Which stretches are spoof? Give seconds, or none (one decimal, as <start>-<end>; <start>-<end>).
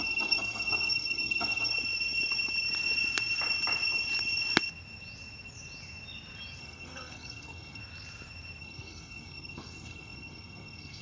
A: 0.0-1.7; 6.6-7.8; 8.6-11.0